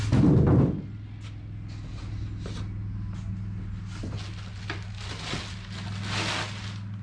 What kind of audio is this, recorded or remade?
recorded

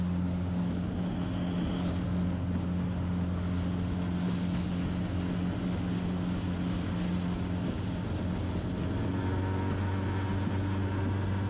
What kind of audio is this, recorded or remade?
recorded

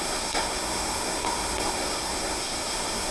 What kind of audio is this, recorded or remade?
remade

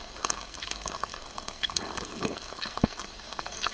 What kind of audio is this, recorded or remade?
remade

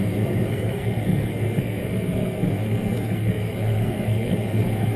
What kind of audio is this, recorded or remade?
remade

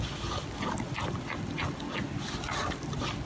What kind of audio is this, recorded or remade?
recorded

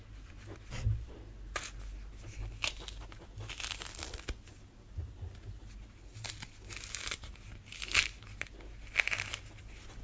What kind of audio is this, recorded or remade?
recorded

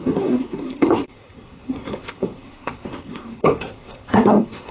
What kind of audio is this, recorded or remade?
remade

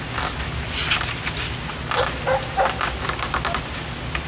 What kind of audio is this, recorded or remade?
recorded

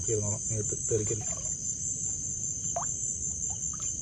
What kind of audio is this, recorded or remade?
recorded